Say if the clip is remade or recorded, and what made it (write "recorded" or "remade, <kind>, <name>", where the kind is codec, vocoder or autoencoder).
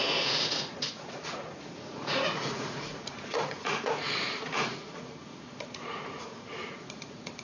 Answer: remade, vocoder, Vocos